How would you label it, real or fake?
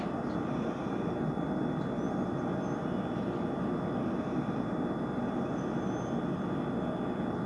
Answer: real